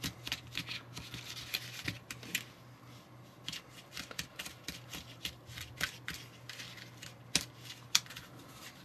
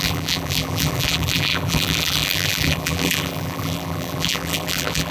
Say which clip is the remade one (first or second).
second